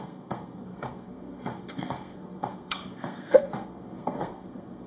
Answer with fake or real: fake